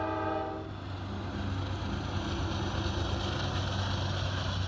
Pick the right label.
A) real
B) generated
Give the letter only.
A